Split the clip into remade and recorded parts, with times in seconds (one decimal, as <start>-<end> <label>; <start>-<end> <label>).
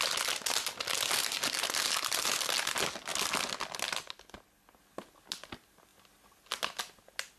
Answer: 0.0-7.4 recorded